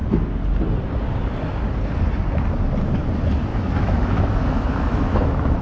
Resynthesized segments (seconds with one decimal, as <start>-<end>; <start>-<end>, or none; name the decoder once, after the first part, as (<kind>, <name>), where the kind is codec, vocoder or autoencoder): 3.5-5.6 (autoencoder, DAC-VAE)